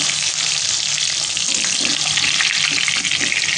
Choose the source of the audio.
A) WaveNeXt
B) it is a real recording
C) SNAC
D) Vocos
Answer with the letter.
B